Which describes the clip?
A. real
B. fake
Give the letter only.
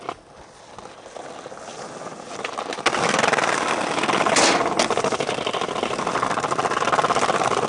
A